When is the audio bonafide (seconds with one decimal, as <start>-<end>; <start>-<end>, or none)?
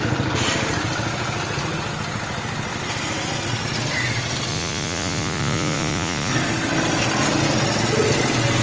0.0-4.5; 6.3-8.6